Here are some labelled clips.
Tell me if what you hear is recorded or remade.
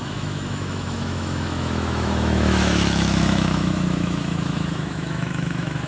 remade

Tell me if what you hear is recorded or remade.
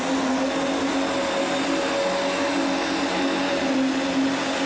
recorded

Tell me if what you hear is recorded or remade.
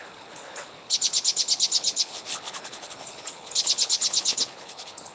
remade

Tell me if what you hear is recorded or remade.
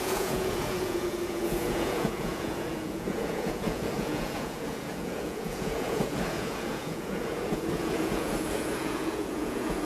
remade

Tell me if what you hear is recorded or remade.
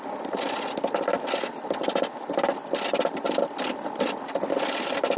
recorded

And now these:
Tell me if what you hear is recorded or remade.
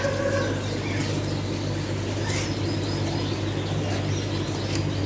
recorded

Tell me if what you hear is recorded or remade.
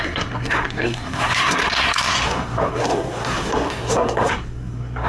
remade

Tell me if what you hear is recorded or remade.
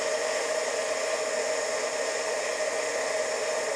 recorded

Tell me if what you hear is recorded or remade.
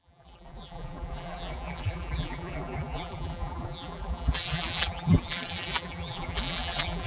remade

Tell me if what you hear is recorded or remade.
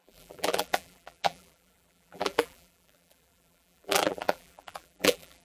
remade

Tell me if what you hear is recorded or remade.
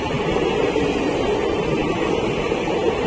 recorded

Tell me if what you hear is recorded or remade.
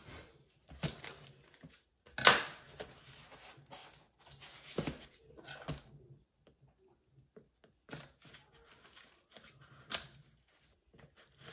recorded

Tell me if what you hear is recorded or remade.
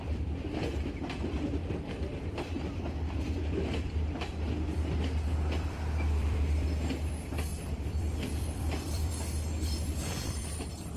remade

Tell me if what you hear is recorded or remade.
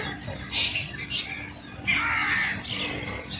recorded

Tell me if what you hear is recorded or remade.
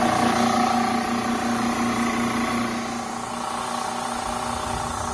recorded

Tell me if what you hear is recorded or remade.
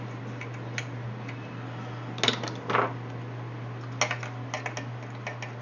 recorded